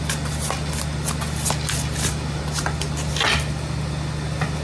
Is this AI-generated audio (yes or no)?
no